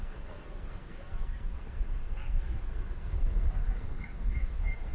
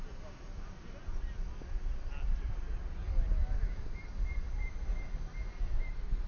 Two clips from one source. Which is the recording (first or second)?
second